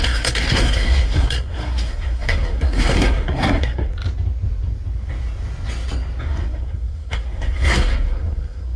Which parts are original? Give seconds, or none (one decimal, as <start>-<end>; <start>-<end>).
3.9-6.2